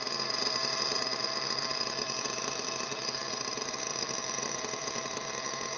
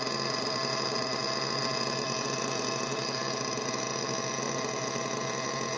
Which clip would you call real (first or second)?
second